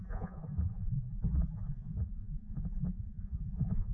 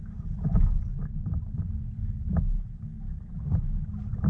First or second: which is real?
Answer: second